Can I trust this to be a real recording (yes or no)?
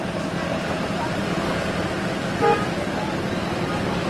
yes